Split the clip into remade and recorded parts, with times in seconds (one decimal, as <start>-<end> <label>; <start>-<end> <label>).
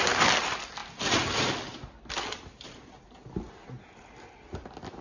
0.0-5.0 recorded